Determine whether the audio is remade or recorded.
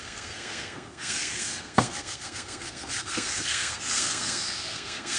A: remade